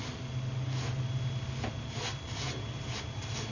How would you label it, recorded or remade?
recorded